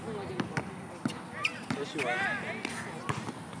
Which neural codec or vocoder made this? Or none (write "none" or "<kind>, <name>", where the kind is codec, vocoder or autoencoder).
none